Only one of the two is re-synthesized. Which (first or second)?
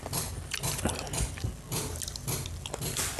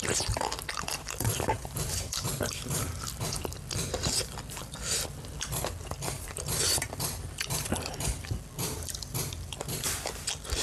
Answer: second